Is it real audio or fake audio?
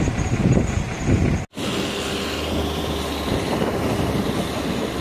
real